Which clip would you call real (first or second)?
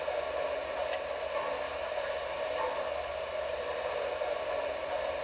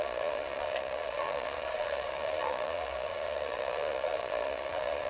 first